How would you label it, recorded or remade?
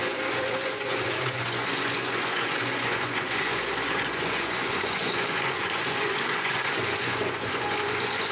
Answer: remade